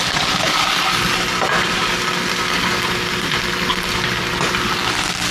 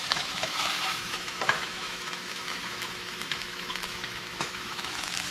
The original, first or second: first